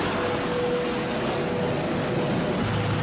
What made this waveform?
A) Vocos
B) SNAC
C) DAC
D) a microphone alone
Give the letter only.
D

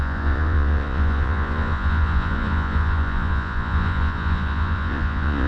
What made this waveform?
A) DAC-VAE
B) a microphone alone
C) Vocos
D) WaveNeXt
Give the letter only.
C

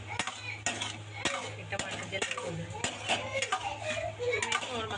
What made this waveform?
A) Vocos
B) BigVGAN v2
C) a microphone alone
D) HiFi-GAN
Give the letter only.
C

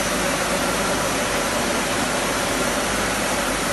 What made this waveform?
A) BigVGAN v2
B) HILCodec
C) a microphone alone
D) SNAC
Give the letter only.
A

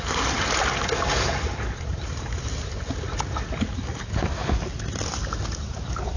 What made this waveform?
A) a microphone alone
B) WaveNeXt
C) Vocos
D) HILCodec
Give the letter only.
A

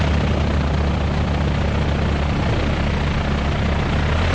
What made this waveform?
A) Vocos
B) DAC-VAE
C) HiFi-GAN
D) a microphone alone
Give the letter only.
D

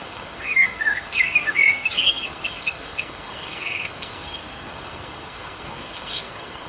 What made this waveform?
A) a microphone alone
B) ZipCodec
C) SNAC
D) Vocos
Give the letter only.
C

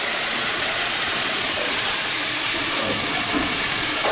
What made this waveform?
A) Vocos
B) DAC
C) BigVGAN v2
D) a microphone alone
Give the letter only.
A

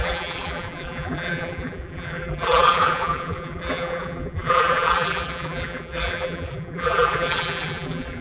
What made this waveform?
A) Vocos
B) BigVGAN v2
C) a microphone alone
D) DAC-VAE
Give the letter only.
B